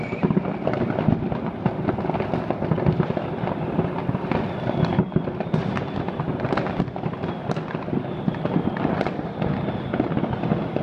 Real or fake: real